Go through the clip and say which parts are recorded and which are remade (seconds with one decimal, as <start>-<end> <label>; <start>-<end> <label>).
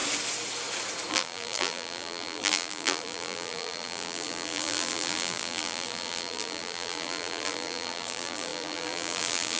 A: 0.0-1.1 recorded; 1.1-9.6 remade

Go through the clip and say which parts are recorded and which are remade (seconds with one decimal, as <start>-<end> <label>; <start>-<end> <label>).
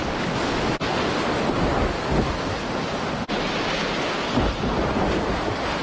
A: 0.0-5.8 recorded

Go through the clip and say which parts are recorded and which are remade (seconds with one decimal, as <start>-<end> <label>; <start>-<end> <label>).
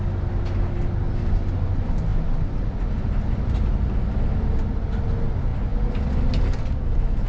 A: 0.0-7.3 recorded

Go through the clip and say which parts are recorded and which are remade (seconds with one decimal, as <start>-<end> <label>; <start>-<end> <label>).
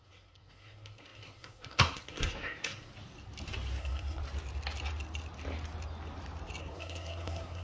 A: 0.0-2.9 remade; 2.9-3.8 recorded; 3.8-4.2 remade; 4.2-6.6 recorded; 6.6-7.6 remade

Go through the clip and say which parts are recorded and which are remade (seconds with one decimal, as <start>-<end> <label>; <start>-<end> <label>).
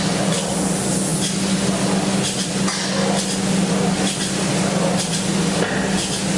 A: 0.0-6.4 recorded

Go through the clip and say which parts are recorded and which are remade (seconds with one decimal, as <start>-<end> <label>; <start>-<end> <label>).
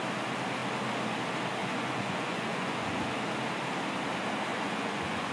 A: 0.0-1.6 recorded; 1.6-3.1 remade; 3.1-4.5 recorded; 4.5-5.3 remade